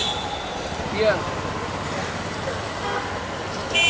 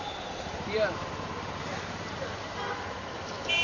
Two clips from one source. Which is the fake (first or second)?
second